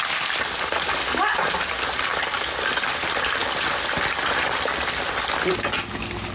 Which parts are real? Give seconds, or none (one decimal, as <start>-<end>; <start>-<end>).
0.0-6.3